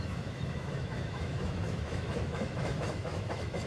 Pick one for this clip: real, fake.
fake